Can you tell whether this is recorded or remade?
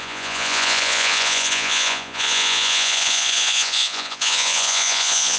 remade